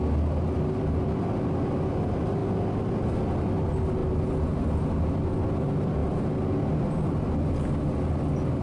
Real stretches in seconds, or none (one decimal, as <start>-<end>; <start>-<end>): 0.0-8.6